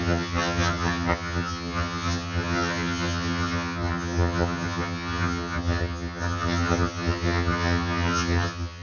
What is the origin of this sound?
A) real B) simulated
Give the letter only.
B